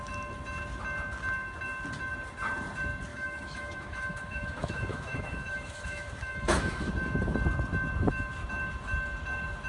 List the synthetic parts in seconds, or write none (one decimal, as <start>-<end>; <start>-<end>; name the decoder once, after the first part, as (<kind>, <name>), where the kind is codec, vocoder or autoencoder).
3.1-6.9 (autoencoder, DAC-VAE)